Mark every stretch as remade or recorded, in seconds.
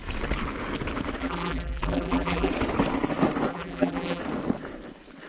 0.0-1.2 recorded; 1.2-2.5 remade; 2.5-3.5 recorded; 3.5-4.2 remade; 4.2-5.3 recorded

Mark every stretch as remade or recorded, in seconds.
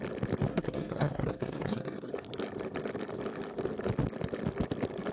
0.0-0.5 recorded; 0.5-2.1 remade; 2.1-5.1 recorded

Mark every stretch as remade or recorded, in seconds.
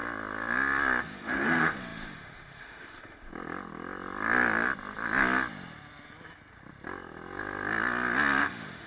0.0-1.0 recorded; 1.0-3.3 remade; 3.3-8.4 recorded; 8.4-8.9 remade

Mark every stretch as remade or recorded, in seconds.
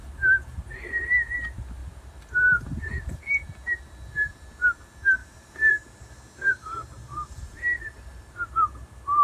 0.0-1.8 recorded; 1.8-3.2 remade; 3.2-5.2 recorded; 5.2-5.7 remade; 5.7-6.4 recorded; 6.4-7.6 remade; 7.6-9.2 recorded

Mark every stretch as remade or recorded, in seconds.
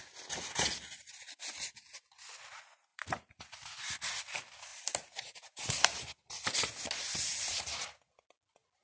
0.0-2.9 recorded; 2.9-3.5 remade; 3.5-4.7 recorded; 4.7-6.0 remade; 6.0-7.3 recorded; 7.3-7.8 remade; 7.8-8.8 recorded